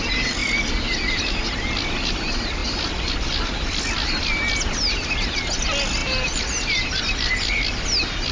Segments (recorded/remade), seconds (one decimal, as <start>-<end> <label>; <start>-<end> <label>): 0.0-8.3 recorded